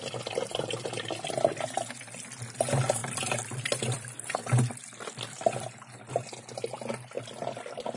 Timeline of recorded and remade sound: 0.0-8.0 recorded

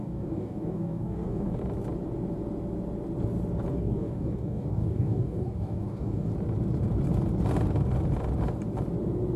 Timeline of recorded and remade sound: 0.0-1.6 remade; 1.6-3.7 recorded; 3.7-6.3 remade; 6.3-9.4 recorded

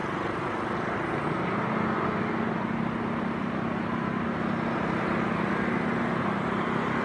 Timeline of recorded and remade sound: 0.0-7.0 recorded

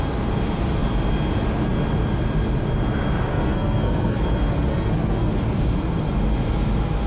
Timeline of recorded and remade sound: 0.0-3.3 recorded; 3.3-4.2 remade; 4.2-4.7 recorded; 4.7-5.3 remade; 5.3-7.1 recorded

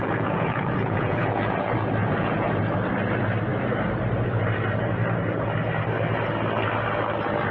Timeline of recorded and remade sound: 0.0-1.6 remade; 1.6-2.0 recorded; 2.0-2.7 remade; 2.7-7.5 recorded

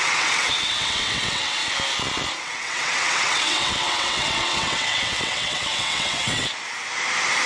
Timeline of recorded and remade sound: 0.0-1.6 remade; 1.6-2.4 recorded; 2.4-6.5 remade; 6.5-7.5 recorded

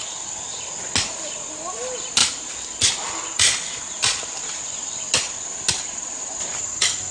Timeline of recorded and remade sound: 0.0-7.1 recorded